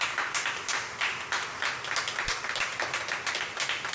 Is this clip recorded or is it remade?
recorded